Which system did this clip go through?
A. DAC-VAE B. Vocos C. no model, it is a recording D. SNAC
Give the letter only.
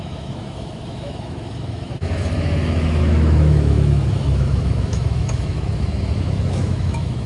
A